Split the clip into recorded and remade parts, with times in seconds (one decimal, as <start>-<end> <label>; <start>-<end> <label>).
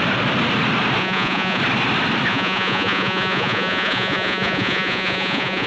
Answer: 0.0-1.0 recorded; 1.0-1.6 remade; 1.6-2.3 recorded; 2.3-5.7 remade